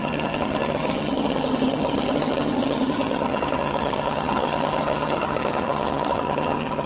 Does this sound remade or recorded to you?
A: remade